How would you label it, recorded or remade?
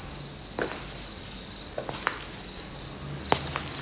recorded